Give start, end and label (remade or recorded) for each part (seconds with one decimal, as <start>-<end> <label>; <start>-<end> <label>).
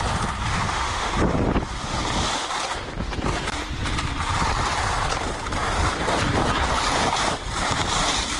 0.0-0.5 recorded; 0.5-1.1 remade; 1.1-8.4 recorded